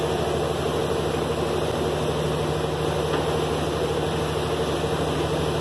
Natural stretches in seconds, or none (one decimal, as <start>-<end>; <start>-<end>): 0.0-5.6